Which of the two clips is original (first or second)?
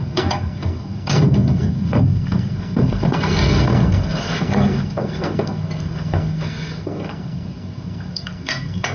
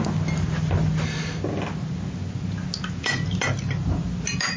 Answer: second